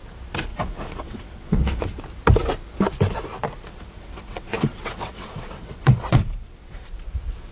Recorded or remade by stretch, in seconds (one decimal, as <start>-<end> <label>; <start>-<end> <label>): 0.0-0.5 recorded; 0.5-2.0 remade; 2.0-3.7 recorded; 3.7-6.8 remade; 6.8-7.5 recorded